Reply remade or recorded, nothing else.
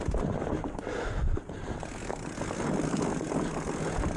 recorded